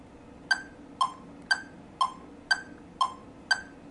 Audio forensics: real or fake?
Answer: real